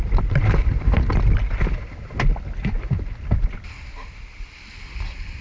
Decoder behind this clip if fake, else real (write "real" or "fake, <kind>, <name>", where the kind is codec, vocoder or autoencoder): real